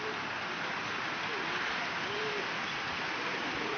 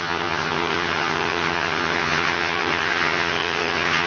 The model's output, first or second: second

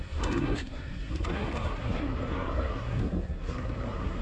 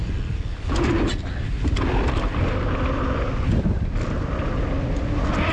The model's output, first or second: first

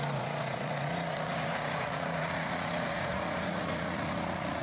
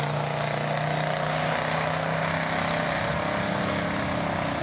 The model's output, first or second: first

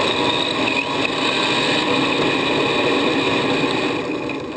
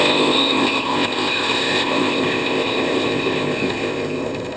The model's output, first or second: second